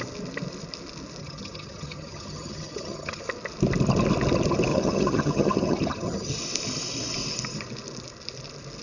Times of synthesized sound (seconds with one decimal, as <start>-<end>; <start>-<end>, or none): 1.2-3.2; 4.7-6.4